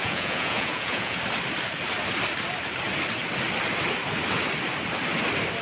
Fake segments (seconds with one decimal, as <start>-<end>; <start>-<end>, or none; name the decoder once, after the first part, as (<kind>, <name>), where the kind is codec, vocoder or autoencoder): 0.0-1.2 (vocoder, Vocos)